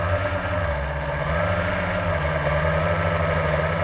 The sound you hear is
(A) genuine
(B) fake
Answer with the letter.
A